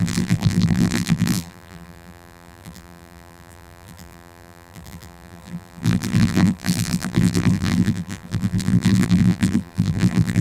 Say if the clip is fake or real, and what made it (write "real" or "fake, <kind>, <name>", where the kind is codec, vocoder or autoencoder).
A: fake, vocoder, BigVGAN v2